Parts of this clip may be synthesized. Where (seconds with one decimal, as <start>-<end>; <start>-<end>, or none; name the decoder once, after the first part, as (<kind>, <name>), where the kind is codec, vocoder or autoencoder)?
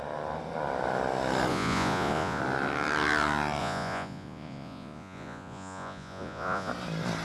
1.5-2.4 (vocoder, Vocos); 3.6-6.7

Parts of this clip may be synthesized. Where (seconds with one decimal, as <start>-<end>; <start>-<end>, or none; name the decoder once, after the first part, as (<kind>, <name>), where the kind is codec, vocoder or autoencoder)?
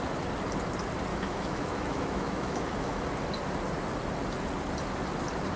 1.1-3.0 (autoencoder, DAC-VAE)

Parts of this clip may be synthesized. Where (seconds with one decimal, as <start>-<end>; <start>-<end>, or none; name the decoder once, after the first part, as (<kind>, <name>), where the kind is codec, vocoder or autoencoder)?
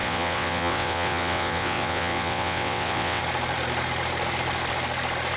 0.0-3.2 (vocoder, WaveNeXt)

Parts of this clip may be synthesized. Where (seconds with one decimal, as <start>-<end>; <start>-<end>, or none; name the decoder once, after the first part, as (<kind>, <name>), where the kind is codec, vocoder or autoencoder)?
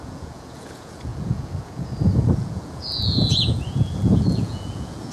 0.0-5.1 (vocoder, Vocos)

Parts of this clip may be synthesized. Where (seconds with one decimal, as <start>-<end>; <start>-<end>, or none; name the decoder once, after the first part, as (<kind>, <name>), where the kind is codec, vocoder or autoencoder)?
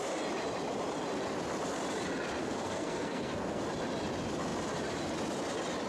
2.4-3.6 (codec, SNAC)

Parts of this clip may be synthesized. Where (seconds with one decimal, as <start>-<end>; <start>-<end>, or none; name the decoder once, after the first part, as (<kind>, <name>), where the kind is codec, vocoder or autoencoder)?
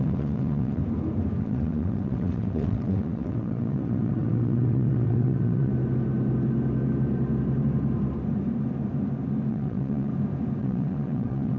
0.0-0.8 (vocoder, WaveNeXt); 1.4-5.7; 9.5-10.1; 10.6-11.6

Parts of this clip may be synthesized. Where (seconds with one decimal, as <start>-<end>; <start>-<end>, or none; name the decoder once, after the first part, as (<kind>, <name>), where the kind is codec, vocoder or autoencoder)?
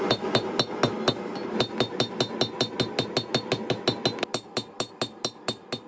none